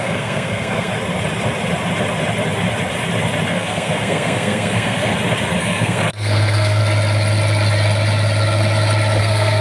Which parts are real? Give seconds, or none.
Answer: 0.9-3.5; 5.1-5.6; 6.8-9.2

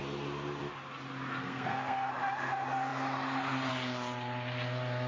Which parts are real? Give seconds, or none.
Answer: 0.0-1.4; 2.1-5.1

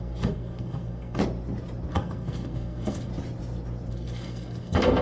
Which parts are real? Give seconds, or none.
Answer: 1.2-1.9; 3.1-3.9